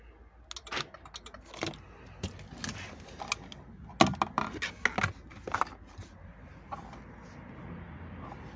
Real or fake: real